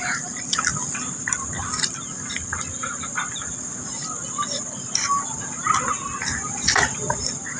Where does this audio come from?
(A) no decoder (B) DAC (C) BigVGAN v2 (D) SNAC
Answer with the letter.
A